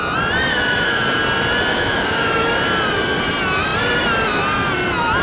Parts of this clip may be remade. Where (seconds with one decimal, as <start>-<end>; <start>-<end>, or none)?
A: 0.5-1.2; 1.7-2.3